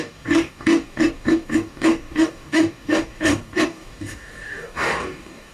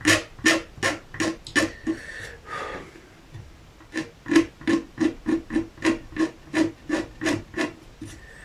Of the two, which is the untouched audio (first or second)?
second